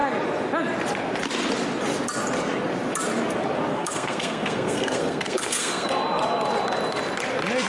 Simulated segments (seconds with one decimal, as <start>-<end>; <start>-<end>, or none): 3.7-5.9